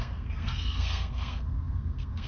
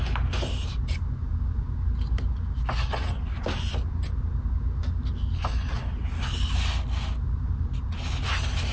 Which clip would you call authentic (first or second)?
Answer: second